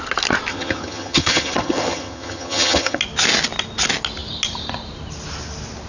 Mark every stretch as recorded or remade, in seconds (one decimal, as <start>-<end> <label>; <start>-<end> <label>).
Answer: 0.0-0.5 recorded; 0.5-3.0 remade; 3.0-5.9 recorded